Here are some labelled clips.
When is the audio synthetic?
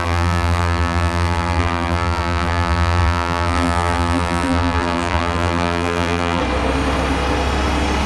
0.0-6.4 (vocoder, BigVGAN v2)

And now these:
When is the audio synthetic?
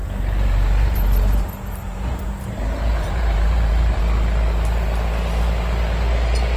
0.0-4.0 (vocoder, BigVGAN v2)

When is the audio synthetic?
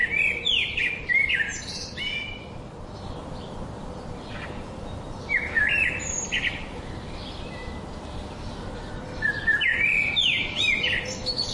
0.0-7.2 (vocoder, BigVGAN v2); 8.7-11.5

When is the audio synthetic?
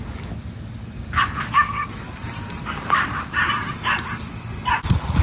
1.8-3.5 (vocoder, BigVGAN v2)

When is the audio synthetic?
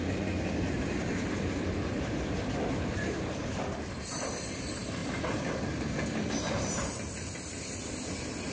0.0-5.0 (vocoder, BigVGAN v2); 6.3-8.5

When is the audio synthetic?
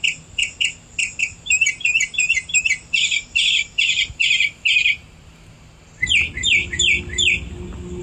0.0-0.5 (vocoder, BigVGAN v2); 1.2-5.8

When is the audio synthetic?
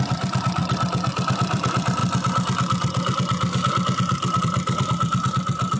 0.0-0.6 (vocoder, BigVGAN v2); 1.1-2.0; 4.4-5.8